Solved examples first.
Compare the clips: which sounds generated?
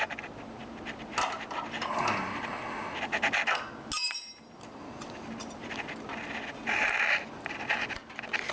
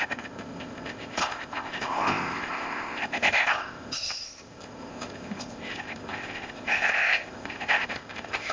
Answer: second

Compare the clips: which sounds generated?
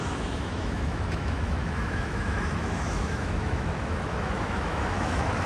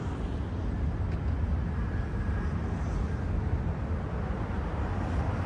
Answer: first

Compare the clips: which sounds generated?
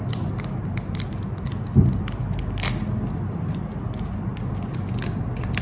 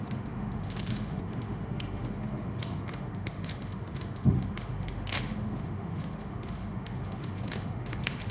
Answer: second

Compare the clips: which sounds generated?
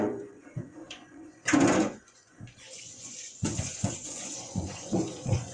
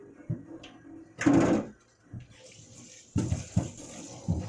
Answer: first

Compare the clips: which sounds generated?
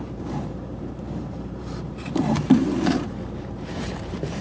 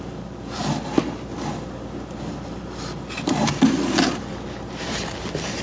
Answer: first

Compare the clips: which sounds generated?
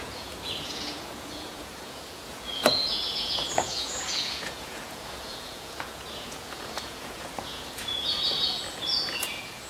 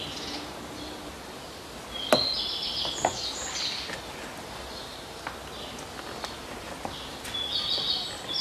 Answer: first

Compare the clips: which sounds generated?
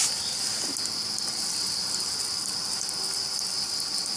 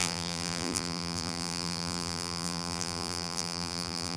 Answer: second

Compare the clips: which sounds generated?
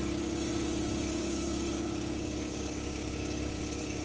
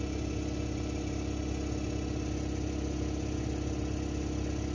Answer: first